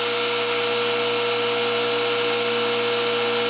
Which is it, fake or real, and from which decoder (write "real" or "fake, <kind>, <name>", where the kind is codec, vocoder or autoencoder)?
real